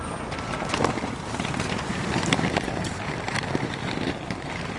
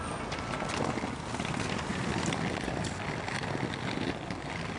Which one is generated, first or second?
first